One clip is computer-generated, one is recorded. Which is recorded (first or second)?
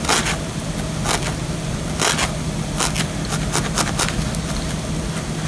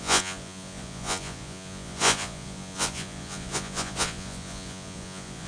first